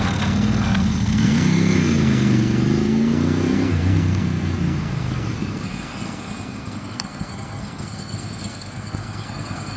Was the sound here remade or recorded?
remade